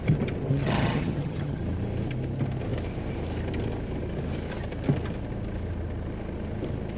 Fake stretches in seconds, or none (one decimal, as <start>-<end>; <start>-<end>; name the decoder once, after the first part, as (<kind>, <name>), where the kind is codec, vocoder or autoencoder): 0.5-1.6 (vocoder, HiFi-GAN)

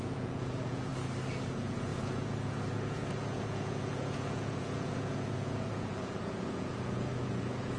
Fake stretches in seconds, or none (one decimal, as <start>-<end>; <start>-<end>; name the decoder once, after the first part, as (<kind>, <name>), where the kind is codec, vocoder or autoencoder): 0.0-0.9 (vocoder, Vocos); 1.5-7.8

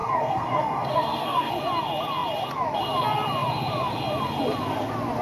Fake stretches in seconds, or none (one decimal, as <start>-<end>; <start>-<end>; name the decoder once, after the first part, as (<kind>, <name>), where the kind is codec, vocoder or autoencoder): 0.0-1.5 (codec, SNAC)

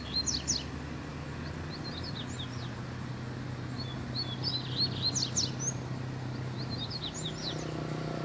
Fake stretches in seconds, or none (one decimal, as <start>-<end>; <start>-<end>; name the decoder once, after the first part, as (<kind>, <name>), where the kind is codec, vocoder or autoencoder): none

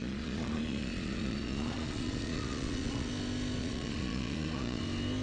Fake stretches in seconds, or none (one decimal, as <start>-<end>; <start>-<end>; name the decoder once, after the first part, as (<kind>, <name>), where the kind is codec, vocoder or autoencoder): 0.0-3.1 (vocoder, Vocos); 3.6-4.8

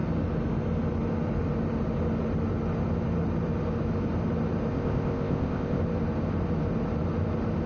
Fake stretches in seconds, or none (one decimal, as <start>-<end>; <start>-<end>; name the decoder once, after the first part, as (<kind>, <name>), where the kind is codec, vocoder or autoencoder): 4.7-5.8 (codec, ZipCodec)